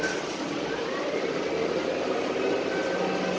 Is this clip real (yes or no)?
yes